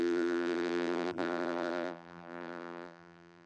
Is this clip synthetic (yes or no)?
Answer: yes